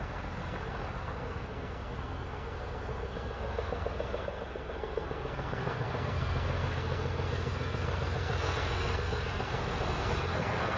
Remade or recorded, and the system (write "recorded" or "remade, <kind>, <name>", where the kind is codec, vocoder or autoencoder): remade, codec, SNAC